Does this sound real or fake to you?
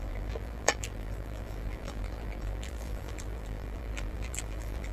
fake